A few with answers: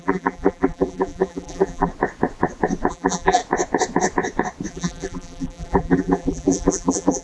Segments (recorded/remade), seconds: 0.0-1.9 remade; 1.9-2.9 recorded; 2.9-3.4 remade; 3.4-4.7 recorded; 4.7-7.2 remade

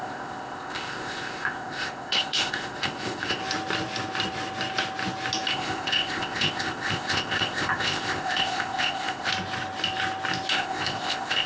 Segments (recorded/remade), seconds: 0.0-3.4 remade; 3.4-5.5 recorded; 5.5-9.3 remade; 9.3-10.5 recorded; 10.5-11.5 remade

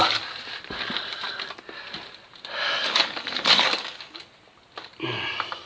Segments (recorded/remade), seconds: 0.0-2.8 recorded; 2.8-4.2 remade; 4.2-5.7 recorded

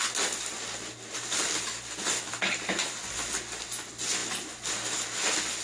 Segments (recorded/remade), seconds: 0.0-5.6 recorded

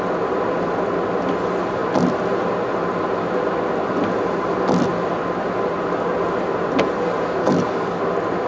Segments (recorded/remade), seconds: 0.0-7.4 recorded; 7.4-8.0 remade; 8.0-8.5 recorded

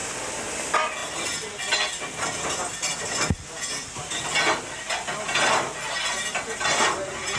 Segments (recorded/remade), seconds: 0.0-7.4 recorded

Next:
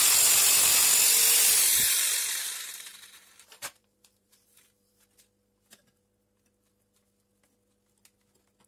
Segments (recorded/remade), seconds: 0.0-1.7 recorded; 1.7-4.9 remade; 4.9-8.7 recorded